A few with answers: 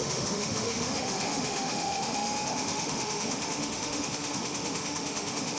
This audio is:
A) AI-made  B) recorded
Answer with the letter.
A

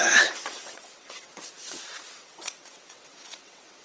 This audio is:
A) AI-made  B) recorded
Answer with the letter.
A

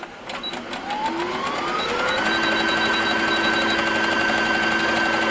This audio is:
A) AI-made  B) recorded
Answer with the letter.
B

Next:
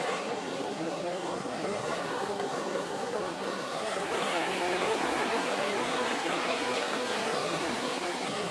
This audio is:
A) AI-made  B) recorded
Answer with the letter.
A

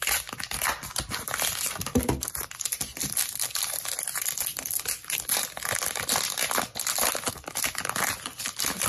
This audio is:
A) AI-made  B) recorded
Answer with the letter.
B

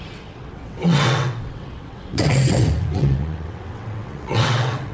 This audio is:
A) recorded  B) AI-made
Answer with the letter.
B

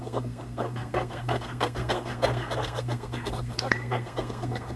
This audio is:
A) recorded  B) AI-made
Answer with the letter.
B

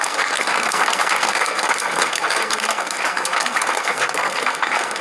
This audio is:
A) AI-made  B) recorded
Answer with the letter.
A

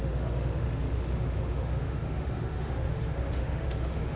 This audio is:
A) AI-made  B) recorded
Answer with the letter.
A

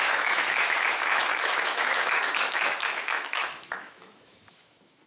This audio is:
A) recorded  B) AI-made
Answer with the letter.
B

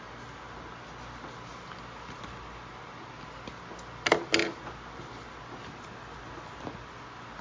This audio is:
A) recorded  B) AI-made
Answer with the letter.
A